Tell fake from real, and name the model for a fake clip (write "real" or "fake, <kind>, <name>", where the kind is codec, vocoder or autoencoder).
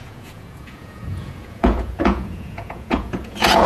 fake, vocoder, Vocos